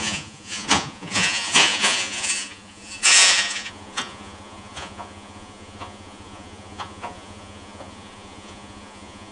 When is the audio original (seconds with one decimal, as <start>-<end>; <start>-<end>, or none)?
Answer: none